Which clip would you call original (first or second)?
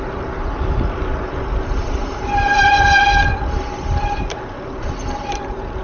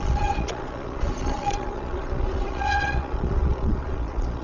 first